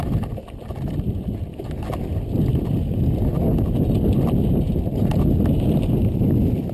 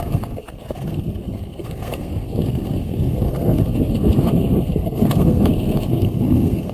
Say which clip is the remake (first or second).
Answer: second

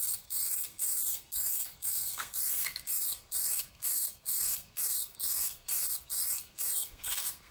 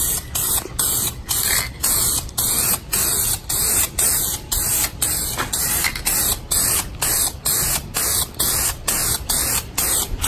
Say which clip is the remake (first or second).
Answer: first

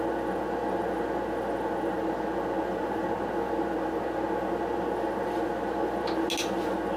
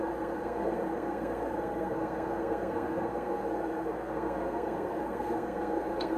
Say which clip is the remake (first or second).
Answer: second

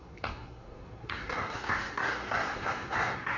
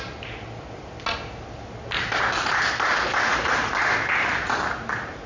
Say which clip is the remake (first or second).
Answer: first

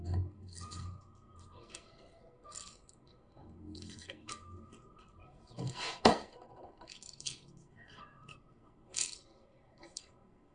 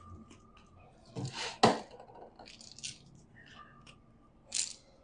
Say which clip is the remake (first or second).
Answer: first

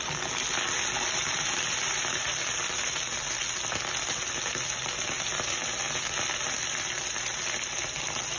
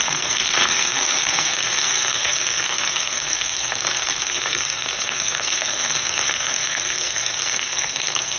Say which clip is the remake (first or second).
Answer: second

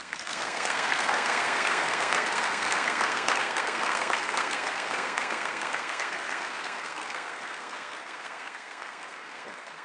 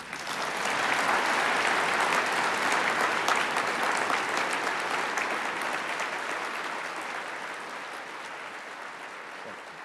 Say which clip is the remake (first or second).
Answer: first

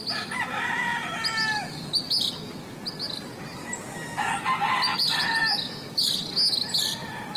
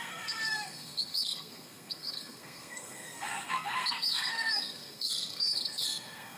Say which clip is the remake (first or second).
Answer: second